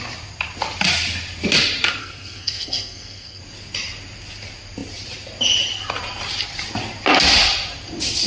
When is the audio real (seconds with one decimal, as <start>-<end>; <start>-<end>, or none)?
0.0-2.0; 3.4-8.3